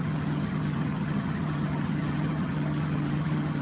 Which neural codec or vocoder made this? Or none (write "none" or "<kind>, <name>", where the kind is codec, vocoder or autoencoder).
vocoder, HiFi-GAN